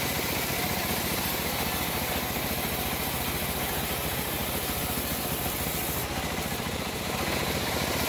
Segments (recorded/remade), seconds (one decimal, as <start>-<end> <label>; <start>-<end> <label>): 0.0-8.1 recorded